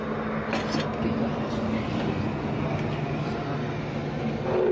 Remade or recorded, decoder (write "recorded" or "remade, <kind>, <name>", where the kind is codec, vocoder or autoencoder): recorded